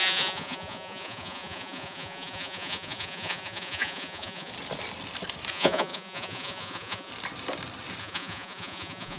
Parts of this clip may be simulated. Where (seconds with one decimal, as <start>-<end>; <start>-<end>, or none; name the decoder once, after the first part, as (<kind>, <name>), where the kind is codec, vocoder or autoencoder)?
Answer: 0.0-4.5 (vocoder, Vocos); 5.5-7.1; 8.0-9.2